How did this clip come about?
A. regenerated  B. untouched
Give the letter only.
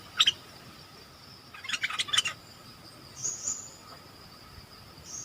B